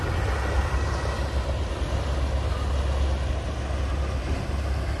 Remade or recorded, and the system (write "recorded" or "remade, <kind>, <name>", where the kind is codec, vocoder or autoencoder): recorded